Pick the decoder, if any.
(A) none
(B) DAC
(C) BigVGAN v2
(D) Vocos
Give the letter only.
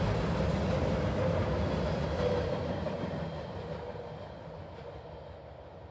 A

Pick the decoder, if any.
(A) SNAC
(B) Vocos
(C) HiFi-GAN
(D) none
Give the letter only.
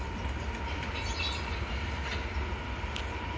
D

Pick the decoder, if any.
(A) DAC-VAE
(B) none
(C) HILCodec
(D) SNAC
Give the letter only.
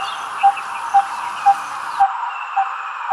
B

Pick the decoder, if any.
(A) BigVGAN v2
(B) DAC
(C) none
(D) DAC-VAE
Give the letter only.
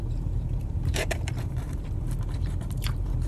A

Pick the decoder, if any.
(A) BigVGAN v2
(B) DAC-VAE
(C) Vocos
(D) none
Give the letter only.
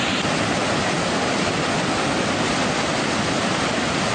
D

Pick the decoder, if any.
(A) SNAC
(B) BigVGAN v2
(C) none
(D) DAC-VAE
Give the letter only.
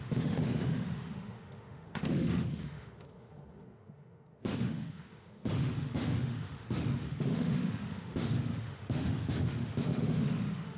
D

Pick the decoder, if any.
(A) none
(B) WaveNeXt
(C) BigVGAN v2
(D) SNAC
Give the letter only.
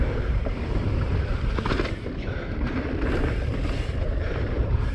C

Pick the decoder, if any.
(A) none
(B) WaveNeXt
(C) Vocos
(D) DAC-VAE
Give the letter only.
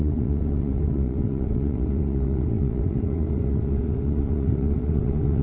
B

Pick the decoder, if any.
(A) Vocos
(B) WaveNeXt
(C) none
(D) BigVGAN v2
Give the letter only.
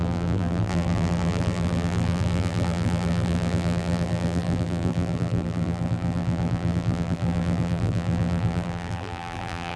D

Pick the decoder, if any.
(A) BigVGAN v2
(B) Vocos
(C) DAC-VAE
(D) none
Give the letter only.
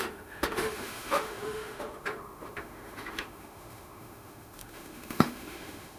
C